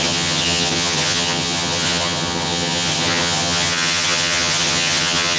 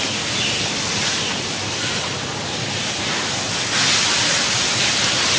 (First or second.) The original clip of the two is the second